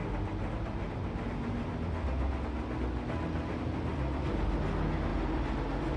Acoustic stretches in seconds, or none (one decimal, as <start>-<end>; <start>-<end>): 2.3-3.9; 4.6-5.1